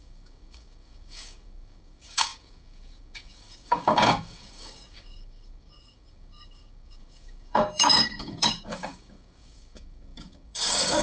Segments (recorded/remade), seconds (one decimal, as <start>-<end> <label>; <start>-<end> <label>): 0.0-11.0 remade